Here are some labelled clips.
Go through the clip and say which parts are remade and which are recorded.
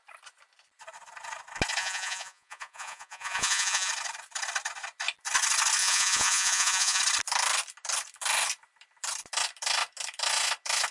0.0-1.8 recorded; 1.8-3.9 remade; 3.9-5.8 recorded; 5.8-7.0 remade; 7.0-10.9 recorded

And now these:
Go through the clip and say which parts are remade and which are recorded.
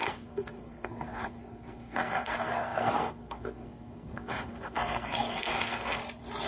0.0-6.0 remade; 6.0-6.5 recorded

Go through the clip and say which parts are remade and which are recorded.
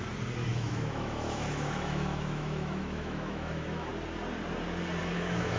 0.0-0.5 recorded; 0.5-3.9 remade; 3.9-5.0 recorded; 5.0-5.6 remade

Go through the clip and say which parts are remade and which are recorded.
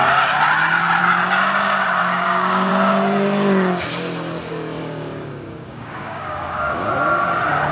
0.0-2.0 recorded; 2.0-2.7 remade; 2.7-4.8 recorded; 4.8-6.9 remade; 6.9-7.7 recorded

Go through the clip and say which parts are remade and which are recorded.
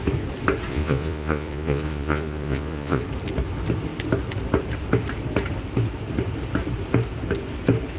0.0-0.7 recorded; 0.7-3.0 remade; 3.0-8.0 recorded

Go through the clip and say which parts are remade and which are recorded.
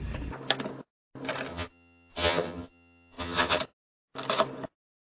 0.0-1.5 recorded; 1.5-3.6 remade; 3.6-5.1 recorded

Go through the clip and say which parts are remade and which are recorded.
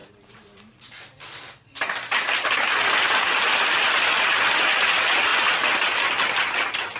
0.0-4.2 remade; 4.2-7.0 recorded